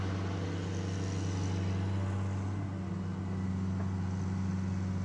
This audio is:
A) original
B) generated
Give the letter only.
A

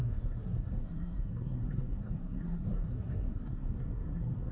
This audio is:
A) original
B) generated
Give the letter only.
B